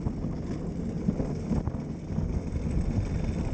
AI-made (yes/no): no